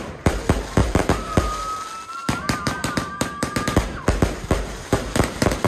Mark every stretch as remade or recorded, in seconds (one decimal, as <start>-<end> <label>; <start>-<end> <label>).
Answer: 0.0-0.8 recorded; 0.8-1.3 remade; 1.3-2.2 recorded; 2.2-5.7 remade